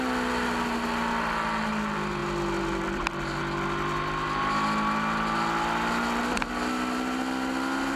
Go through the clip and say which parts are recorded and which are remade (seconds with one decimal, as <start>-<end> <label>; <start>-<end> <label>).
0.0-8.0 recorded